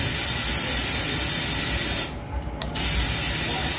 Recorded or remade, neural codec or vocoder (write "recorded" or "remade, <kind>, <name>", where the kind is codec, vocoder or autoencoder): recorded